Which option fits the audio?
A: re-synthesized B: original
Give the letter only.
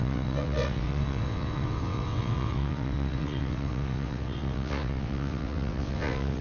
A